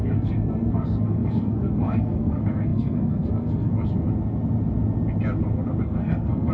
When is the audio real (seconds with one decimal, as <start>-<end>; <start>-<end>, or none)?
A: 3.7-5.8